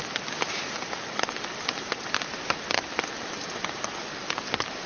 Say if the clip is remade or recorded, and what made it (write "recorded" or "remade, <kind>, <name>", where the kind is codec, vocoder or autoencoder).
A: remade, vocoder, BigVGAN v2